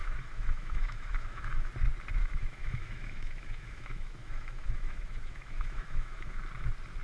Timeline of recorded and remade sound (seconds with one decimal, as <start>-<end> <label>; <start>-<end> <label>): 0.0-1.7 remade; 1.7-2.2 recorded; 2.2-6.4 remade; 6.4-7.0 recorded